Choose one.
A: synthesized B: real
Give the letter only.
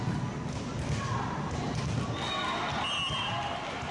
B